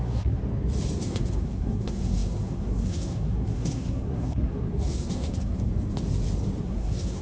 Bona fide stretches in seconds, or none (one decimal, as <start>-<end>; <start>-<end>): 0.4-1.0; 5.7-6.6